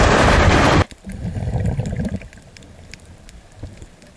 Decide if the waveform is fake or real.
real